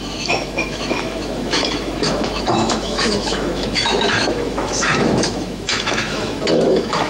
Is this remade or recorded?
remade